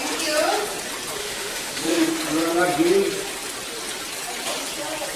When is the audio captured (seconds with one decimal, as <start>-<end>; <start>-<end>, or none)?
0.0-1.2; 2.1-5.2